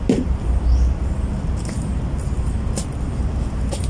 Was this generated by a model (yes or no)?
no